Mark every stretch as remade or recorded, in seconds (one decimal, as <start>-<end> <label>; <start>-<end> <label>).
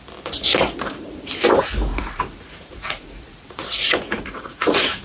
0.0-1.9 recorded; 1.9-5.0 remade